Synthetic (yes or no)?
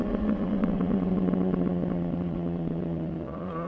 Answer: yes